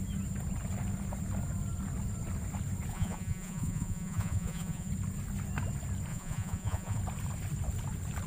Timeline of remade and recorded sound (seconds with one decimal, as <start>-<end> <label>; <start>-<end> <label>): 0.0-2.9 recorded; 2.9-4.9 remade; 4.9-6.1 recorded; 6.1-7.0 remade; 7.0-8.3 recorded